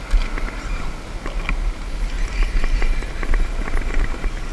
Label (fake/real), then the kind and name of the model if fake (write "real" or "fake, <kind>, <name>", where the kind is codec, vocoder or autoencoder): real